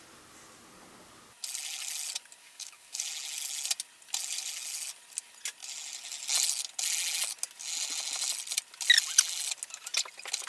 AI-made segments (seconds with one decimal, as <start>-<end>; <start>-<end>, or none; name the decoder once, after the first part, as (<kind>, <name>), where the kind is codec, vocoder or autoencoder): 2.4-3.0 (codec, DAC)